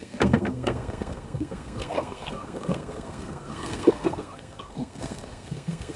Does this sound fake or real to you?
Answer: fake